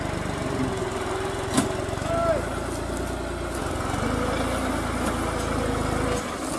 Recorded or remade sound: recorded